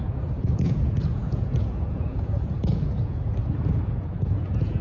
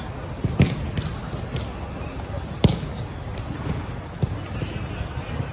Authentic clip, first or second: second